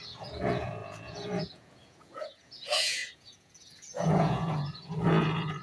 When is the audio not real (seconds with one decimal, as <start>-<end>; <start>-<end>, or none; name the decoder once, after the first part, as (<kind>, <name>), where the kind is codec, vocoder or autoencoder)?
0.0-5.6 (vocoder, Vocos)